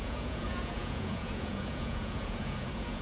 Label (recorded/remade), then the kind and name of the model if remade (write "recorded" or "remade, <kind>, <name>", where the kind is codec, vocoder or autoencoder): remade, vocoder, Vocos